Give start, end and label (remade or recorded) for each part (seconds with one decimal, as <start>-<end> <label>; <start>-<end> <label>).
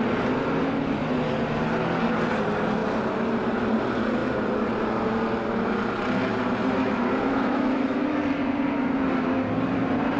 0.0-7.3 recorded; 7.3-8.2 remade; 8.2-10.2 recorded